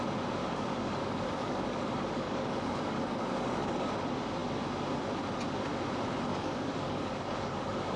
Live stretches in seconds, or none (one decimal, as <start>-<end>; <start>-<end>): 0.0-0.4; 3.9-6.3